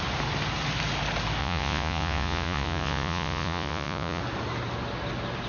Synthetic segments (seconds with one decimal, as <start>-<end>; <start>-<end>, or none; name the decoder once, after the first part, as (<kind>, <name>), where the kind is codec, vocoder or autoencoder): 1.4-4.2 (vocoder, Vocos)